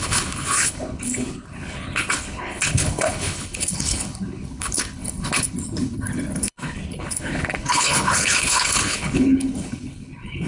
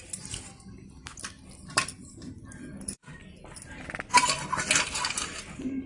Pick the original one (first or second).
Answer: second